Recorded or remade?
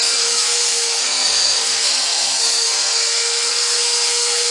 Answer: remade